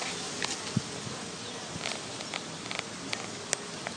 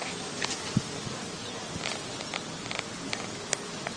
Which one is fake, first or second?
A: first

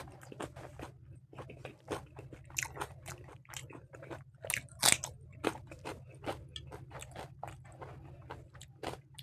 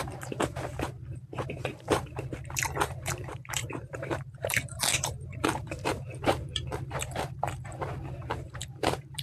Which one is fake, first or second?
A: second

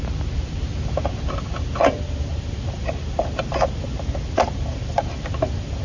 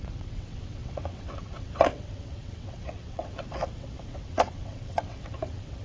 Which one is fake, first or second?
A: second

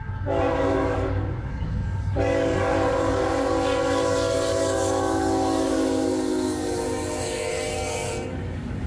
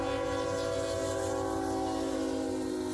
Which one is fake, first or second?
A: first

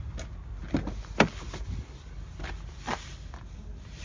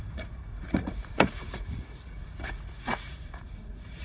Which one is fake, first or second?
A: second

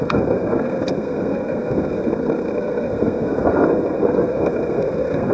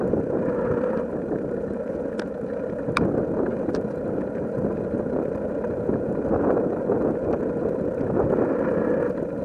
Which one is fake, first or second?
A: first